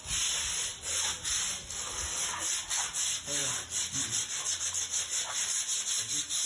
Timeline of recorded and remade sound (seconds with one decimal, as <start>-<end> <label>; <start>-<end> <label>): 0.0-6.5 recorded

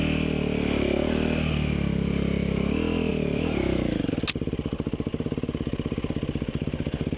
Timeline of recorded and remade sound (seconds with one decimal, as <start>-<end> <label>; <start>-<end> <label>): 0.0-3.1 recorded; 3.1-4.1 remade; 4.1-7.2 recorded

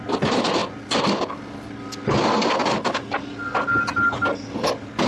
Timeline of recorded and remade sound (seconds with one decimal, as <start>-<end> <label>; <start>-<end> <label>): 0.0-5.1 recorded

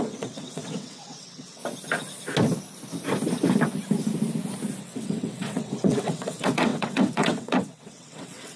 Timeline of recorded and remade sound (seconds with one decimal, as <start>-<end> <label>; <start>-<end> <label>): 0.0-1.6 remade; 1.6-4.8 recorded; 4.8-8.6 remade

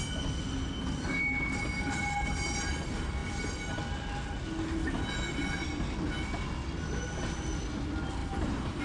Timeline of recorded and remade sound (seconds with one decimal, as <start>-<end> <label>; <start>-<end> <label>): 0.0-8.2 recorded; 8.2-8.8 remade